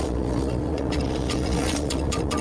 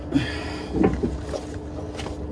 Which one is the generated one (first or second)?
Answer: first